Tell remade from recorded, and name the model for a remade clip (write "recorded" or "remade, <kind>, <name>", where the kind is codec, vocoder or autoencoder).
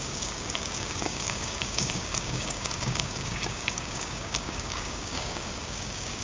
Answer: remade, codec, DAC